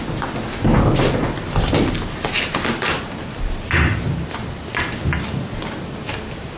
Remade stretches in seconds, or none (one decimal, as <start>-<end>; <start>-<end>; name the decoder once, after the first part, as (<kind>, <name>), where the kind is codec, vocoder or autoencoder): none